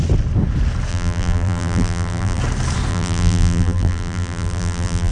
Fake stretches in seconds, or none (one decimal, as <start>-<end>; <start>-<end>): 0.9-2.4; 2.9-5.1